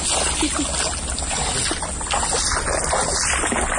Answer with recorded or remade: recorded